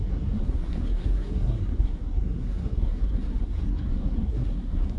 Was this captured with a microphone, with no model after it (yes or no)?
no